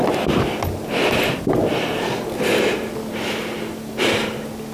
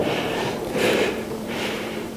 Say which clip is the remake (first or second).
second